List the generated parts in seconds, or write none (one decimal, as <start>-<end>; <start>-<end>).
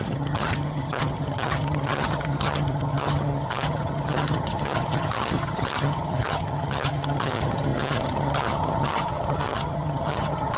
0.0-10.6